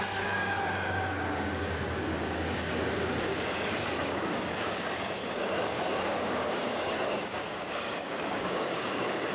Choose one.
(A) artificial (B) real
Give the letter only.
A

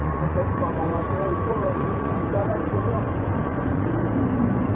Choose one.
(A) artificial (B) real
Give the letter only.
A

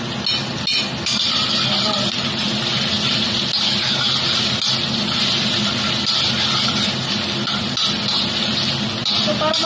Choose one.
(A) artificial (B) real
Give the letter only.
B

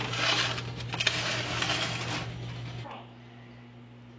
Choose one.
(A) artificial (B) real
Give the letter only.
B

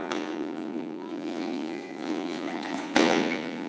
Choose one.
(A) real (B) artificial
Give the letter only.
B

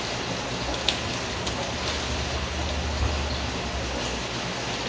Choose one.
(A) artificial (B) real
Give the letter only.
B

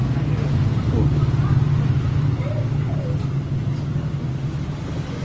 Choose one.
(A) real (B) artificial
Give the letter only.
A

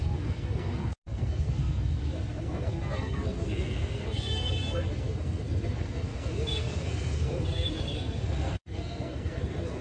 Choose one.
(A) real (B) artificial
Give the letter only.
B